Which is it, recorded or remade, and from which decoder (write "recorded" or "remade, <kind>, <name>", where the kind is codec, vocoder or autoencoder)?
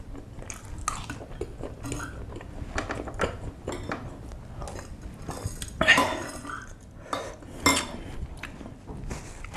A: recorded